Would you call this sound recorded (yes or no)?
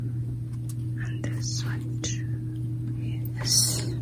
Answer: yes